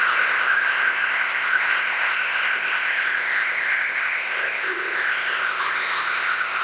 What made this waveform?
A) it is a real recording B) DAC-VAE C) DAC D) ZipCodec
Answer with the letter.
D